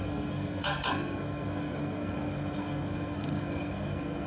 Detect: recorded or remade remade